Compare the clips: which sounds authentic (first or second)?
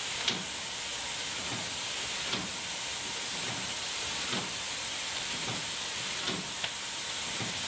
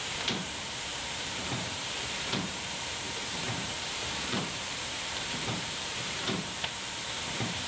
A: first